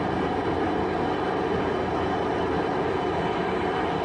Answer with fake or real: real